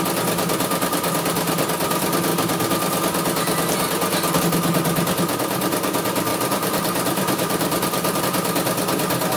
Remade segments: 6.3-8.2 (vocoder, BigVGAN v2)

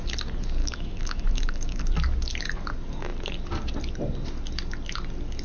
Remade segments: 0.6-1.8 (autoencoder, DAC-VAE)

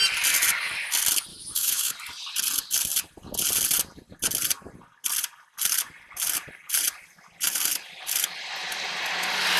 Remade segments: 1.3-1.9 (autoencoder, DAC-VAE)

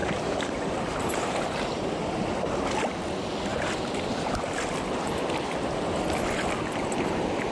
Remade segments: 0.0-2.0 (vocoder, BigVGAN v2); 3.5-4.0